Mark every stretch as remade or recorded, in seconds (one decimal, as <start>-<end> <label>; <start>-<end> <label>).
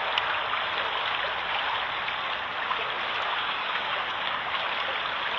0.0-3.3 recorded; 3.3-4.5 remade; 4.5-5.4 recorded